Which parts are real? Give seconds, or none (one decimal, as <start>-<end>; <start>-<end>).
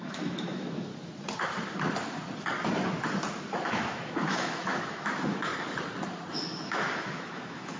0.9-3.5; 5.5-6.3